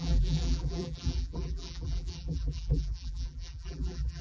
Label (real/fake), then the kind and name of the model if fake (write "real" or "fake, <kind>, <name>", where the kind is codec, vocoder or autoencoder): fake, vocoder, BigVGAN v2